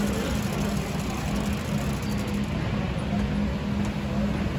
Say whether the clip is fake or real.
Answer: real